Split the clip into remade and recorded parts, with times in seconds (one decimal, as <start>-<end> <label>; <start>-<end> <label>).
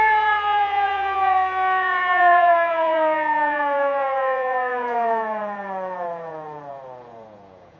0.0-7.8 remade